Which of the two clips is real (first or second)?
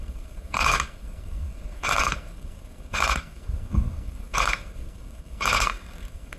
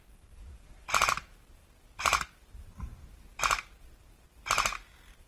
second